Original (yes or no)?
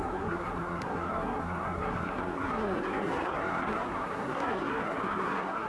no